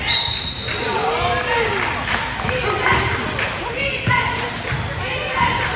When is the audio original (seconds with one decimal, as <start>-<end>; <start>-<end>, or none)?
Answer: 0.0-5.8